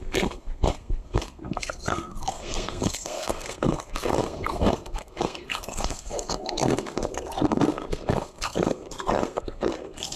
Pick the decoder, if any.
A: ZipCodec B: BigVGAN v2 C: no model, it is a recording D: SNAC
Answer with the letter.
D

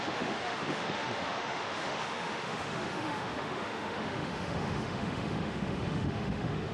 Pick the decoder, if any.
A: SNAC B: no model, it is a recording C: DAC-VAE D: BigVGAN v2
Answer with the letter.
C